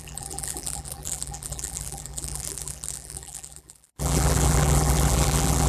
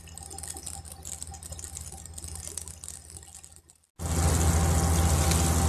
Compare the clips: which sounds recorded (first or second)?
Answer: second